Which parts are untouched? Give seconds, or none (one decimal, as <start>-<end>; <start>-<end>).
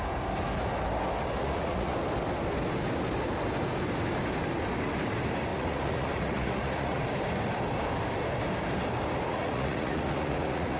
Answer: 0.0-1.4; 1.9-5.5; 7.0-9.3